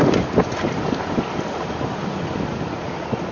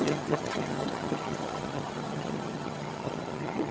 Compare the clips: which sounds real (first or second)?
first